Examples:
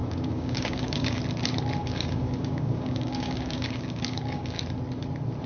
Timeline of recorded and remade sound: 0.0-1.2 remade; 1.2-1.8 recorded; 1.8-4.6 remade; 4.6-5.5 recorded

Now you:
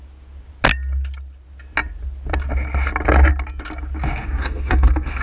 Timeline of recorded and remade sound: 0.0-4.4 recorded; 4.4-5.2 remade

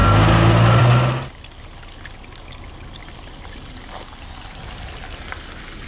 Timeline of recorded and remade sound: 0.0-5.9 recorded

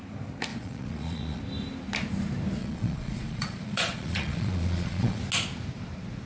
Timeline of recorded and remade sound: 0.0-0.5 recorded; 0.5-1.4 remade; 1.4-2.6 recorded; 2.6-5.2 remade; 5.2-6.3 recorded

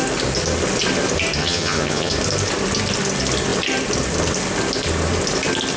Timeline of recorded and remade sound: 0.0-1.4 recorded; 1.4-2.1 remade; 2.1-5.8 recorded